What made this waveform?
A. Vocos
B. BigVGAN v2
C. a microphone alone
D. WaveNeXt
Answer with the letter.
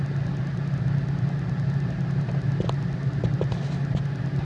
C